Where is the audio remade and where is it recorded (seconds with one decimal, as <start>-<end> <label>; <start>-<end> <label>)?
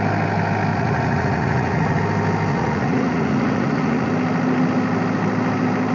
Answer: 0.0-0.7 recorded; 0.7-2.0 remade; 2.0-2.5 recorded; 2.5-4.1 remade; 4.1-5.9 recorded